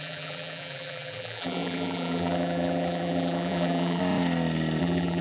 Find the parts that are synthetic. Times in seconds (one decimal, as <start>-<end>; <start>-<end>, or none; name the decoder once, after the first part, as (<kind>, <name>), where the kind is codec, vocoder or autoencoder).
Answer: 0.0-4.0 (vocoder, BigVGAN v2); 4.8-5.2